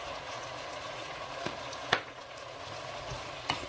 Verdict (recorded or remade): remade